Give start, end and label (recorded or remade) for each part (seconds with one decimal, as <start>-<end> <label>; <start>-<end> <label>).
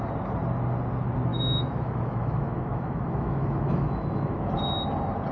0.0-1.3 recorded; 1.3-4.5 remade; 4.5-5.3 recorded